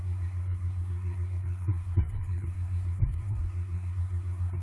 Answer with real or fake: fake